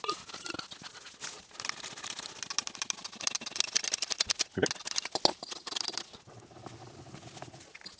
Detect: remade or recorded recorded